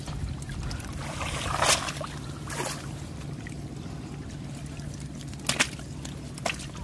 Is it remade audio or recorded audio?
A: recorded